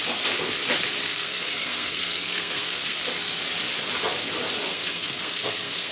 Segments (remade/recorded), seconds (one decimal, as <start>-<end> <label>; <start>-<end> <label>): 0.0-1.1 recorded; 1.1-3.1 remade; 3.1-4.7 recorded; 4.7-5.9 remade